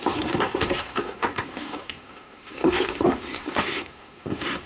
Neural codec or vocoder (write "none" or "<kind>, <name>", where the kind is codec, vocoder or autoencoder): codec, SNAC